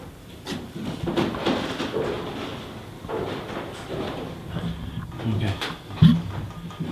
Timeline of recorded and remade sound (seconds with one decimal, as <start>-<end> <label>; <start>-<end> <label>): 0.0-6.9 recorded